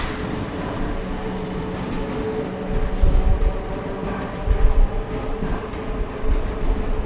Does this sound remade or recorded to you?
recorded